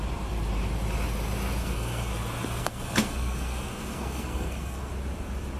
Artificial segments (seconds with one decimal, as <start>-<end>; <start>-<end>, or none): 1.6-2.1; 2.6-4.9